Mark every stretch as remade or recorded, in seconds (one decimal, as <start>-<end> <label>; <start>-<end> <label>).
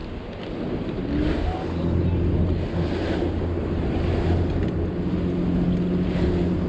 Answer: 0.0-6.7 recorded